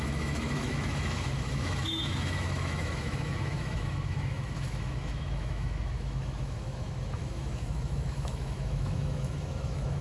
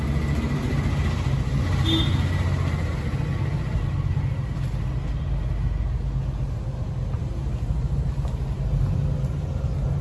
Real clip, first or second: second